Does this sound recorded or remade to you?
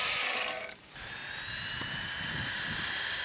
recorded